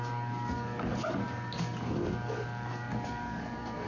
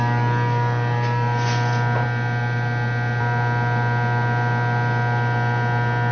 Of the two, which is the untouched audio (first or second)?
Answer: second